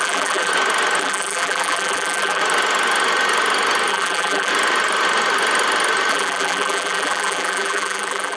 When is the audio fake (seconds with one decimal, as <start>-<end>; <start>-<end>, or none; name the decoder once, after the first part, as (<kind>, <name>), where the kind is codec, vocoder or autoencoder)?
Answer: 0.0-0.5 (vocoder, BigVGAN v2); 1.0-2.4; 3.9-4.5; 6.1-8.4